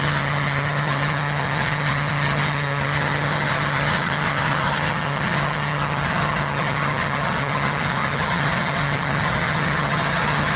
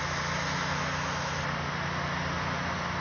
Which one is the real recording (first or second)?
second